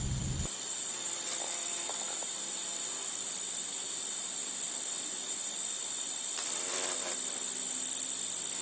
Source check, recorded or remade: recorded